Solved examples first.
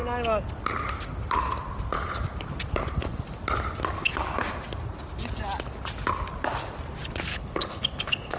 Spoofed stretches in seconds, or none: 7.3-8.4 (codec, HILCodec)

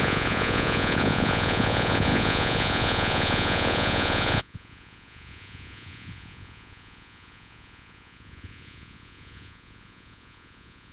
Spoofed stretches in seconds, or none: 0.0-10.9 (vocoder, Vocos)

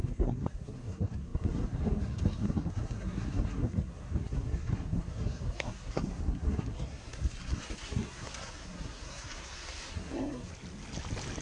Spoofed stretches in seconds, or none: 0.0-10.5 (codec, SNAC)

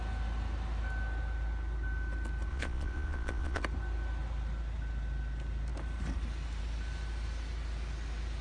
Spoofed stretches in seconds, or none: 2.5-3.6 (vocoder, Vocos)